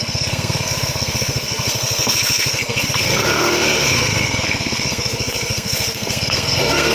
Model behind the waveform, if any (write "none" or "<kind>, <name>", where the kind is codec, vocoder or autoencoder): codec, SNAC